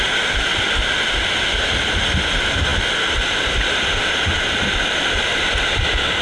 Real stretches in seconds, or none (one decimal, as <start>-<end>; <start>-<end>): 0.0-6.2